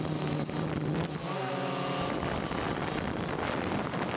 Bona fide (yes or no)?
yes